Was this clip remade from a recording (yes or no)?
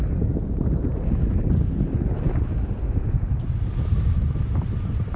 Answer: no